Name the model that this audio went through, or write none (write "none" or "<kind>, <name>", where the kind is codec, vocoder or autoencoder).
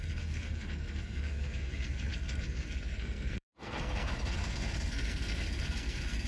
codec, SNAC